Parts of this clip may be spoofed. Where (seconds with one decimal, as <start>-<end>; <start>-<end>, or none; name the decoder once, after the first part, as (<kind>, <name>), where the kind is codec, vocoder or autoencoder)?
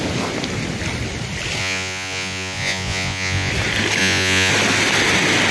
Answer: 1.6-3.5 (vocoder, Vocos); 4.0-4.5